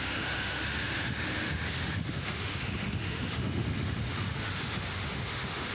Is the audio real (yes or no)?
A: no